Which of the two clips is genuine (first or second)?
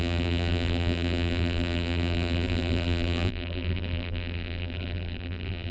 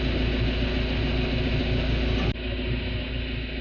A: second